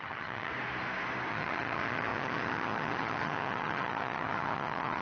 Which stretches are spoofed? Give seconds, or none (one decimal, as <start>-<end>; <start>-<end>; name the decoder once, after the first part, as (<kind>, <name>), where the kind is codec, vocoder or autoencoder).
0.0-0.5 (vocoder, HiFi-GAN); 1.3-5.0